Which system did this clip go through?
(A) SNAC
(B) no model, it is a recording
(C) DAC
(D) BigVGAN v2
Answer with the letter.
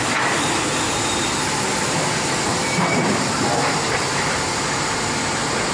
D